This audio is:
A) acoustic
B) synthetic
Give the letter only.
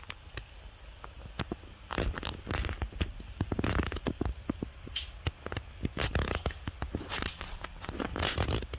A